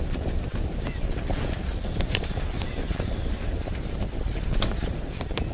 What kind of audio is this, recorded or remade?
remade